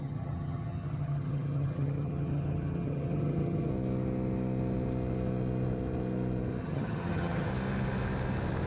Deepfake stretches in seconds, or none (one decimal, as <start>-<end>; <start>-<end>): 0.0-3.7; 6.6-7.5

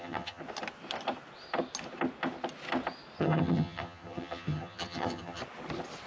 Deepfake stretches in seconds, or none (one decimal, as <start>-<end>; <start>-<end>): 0.0-0.4; 3.2-5.4

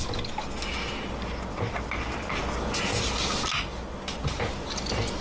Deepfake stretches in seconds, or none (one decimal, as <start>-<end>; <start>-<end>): none